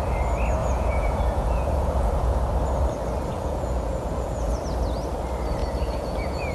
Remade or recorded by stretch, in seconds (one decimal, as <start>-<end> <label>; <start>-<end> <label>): 0.0-0.6 recorded; 0.6-2.4 remade; 2.4-3.3 recorded; 3.3-4.6 remade; 4.6-5.6 recorded; 5.6-6.5 remade